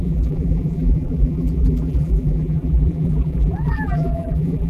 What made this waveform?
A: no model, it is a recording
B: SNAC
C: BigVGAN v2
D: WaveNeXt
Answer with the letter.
C